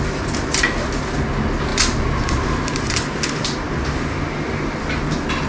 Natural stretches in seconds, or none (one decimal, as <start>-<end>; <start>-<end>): 0.0-1.7; 4.8-5.5